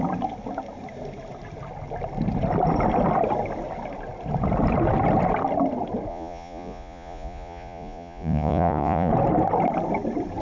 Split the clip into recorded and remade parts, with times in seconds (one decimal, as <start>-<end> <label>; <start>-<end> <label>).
0.0-6.1 recorded; 6.1-9.1 remade; 9.1-10.4 recorded